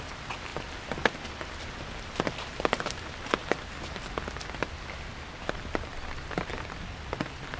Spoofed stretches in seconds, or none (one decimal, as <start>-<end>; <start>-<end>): 5.9-6.5